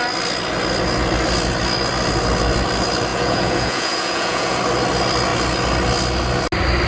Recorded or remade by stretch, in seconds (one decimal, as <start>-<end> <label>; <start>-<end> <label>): 0.0-3.1 recorded; 3.1-4.6 remade; 4.6-6.9 recorded